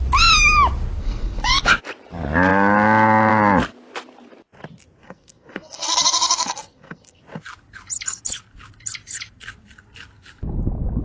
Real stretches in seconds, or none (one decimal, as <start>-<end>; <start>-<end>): 0.0-1.0; 1.7-5.0; 7.2-11.0